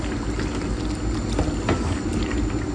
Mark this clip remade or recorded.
recorded